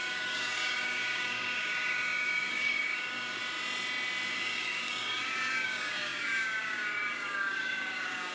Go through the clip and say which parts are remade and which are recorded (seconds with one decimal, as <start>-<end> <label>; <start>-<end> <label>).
0.0-3.4 remade; 3.4-4.3 recorded; 4.3-8.3 remade